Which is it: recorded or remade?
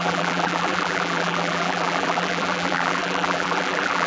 remade